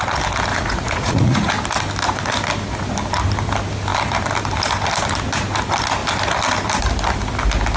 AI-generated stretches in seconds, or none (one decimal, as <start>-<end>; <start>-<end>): 0.5-1.5